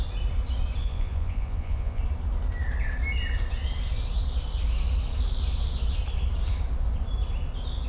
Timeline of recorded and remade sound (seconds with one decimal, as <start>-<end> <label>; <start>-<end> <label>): 0.0-0.8 recorded; 0.8-2.0 remade; 2.0-7.9 recorded